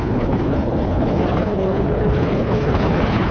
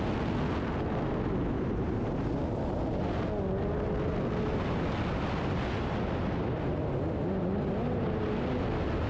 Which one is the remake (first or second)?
first